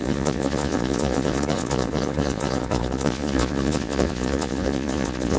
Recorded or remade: remade